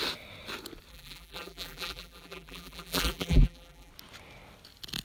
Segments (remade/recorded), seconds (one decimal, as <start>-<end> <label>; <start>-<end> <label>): 0.0-0.9 recorded; 0.9-3.9 remade; 3.9-5.0 recorded